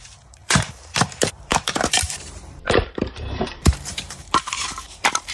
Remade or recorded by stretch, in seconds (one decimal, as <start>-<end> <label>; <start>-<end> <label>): 0.0-5.3 remade